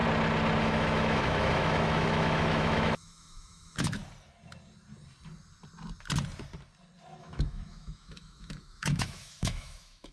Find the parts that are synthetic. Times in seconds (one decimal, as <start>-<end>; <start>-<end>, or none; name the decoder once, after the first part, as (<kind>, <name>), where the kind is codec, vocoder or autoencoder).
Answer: 0.6-4.0 (autoencoder, DAC-VAE); 7.2-10.1